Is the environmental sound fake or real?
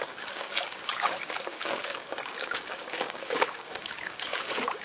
fake